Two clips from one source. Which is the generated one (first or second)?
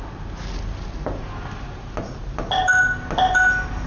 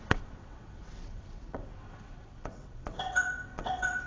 second